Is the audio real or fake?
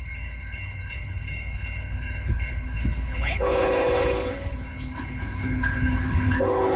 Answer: fake